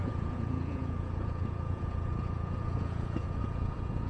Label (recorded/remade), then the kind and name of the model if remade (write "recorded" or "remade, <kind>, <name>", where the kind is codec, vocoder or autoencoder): remade, vocoder, Vocos